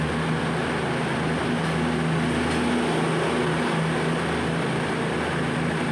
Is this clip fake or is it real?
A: real